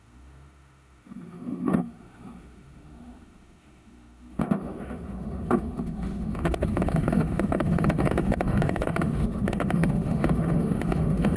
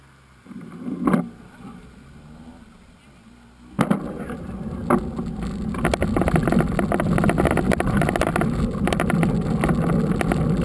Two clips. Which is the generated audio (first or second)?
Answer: first